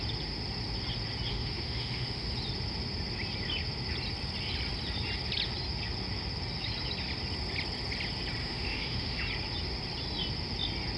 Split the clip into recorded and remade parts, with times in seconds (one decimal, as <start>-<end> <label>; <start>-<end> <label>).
0.0-1.3 recorded; 1.3-2.3 remade; 2.3-8.4 recorded; 8.4-9.2 remade; 9.2-11.0 recorded